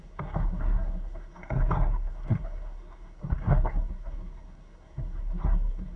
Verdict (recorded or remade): remade